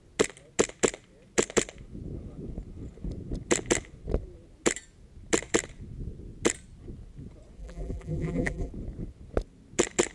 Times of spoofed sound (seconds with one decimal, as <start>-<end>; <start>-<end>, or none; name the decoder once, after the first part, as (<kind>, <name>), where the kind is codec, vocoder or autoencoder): 7.6-8.7 (vocoder, BigVGAN v2)